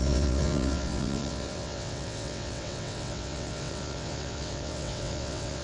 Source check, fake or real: fake